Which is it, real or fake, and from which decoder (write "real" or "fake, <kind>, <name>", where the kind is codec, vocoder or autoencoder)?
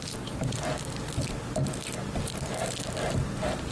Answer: real